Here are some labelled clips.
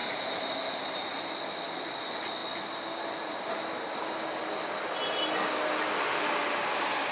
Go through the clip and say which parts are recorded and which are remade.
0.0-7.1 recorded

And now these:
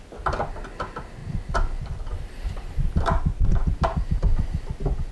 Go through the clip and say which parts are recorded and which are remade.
0.0-5.1 recorded

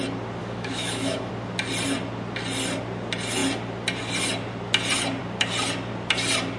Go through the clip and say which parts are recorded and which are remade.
0.0-0.4 recorded; 0.4-1.3 remade; 1.3-6.6 recorded

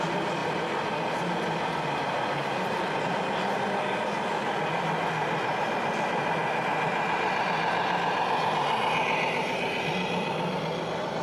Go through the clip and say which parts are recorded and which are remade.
0.0-11.2 recorded

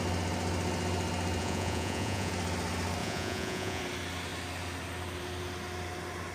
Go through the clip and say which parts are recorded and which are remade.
0.0-1.4 recorded; 1.4-2.3 remade; 2.3-3.0 recorded; 3.0-3.8 remade; 3.8-6.3 recorded

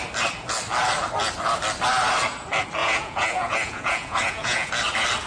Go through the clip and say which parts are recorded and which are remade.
0.0-2.8 recorded; 2.8-4.7 remade; 4.7-5.3 recorded

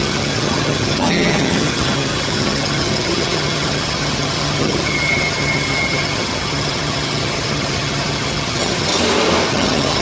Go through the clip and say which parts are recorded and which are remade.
0.0-8.9 remade; 8.9-9.5 recorded; 9.5-10.0 remade